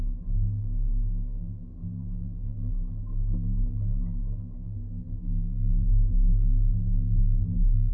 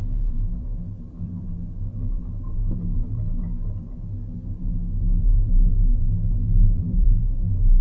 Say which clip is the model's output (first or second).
second